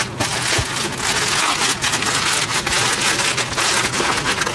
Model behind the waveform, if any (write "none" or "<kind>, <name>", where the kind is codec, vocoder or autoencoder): none